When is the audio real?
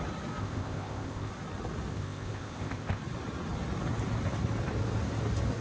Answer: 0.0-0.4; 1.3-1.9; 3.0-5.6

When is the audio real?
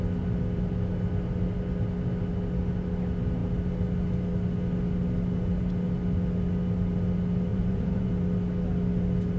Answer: 0.0-7.5; 8.1-9.4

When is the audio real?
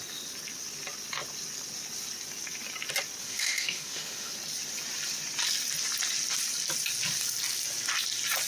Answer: 0.0-3.2; 4.3-8.5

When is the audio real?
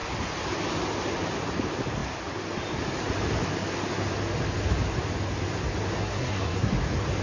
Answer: 0.0-6.0; 6.7-7.2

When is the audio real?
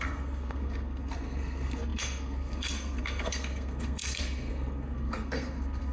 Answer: none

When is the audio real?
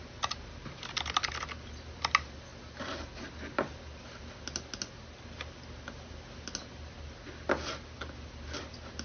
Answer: 0.0-9.0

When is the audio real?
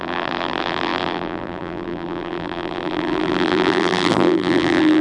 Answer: none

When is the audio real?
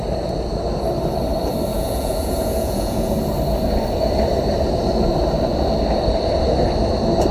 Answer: 0.0-1.7; 3.1-7.3